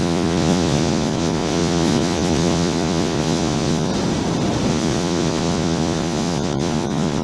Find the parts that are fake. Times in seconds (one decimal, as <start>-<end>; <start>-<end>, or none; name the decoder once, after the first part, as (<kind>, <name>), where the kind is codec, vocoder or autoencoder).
0.0-3.9 (vocoder, Vocos); 4.7-7.2